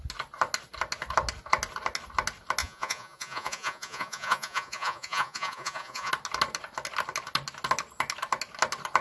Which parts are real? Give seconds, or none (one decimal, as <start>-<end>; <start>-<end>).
0.0-2.6; 6.1-9.0